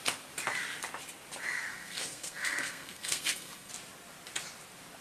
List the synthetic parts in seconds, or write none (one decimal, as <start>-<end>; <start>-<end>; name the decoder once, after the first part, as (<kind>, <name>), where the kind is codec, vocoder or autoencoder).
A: 1.7-3.7 (codec, SNAC)

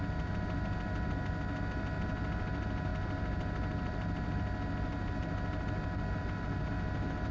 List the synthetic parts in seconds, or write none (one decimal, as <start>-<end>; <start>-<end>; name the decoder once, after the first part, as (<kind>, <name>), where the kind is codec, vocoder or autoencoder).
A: none

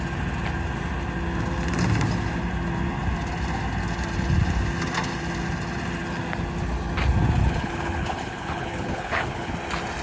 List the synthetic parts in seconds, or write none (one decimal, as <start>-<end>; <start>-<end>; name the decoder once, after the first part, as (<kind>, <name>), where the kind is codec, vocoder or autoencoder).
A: 7.4-9.5 (codec, HILCodec)

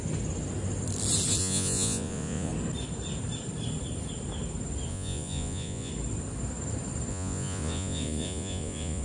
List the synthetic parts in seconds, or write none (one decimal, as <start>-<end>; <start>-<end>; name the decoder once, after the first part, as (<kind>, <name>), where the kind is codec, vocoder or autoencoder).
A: 1.4-2.5 (vocoder, Vocos); 4.9-5.9; 7.1-9.0

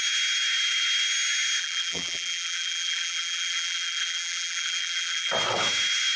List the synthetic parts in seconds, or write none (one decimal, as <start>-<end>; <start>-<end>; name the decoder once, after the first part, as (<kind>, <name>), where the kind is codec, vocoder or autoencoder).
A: 1.6-5.3 (vocoder, BigVGAN v2)

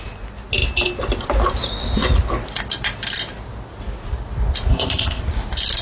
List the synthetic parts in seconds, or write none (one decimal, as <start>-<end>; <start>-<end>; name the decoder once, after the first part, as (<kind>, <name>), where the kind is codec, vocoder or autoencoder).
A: 4.7-5.2 (codec, ZipCodec)

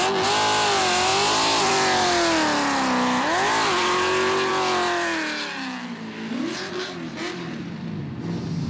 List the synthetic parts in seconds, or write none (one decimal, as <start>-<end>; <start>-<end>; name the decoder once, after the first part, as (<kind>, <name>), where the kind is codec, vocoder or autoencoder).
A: none

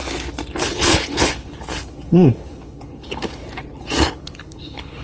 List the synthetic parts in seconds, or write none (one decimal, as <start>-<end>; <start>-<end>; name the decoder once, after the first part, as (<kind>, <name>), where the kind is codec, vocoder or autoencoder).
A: 0.6-3.4 (codec, HILCodec); 4.1-5.0